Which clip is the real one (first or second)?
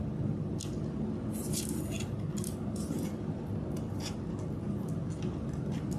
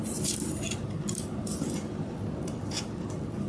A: first